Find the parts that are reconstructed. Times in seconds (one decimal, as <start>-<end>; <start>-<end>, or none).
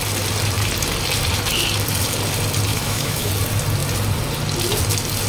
2.7-3.3